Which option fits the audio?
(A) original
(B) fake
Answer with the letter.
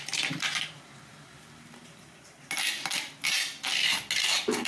A